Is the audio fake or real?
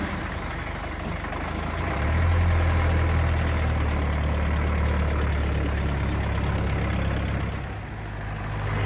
real